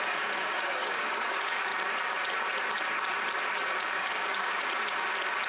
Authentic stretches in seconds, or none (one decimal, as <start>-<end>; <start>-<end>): 1.7-3.6; 4.6-5.5

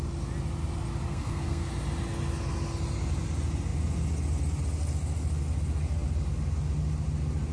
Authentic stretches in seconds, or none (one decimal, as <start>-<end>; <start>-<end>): 0.0-1.1; 1.7-7.5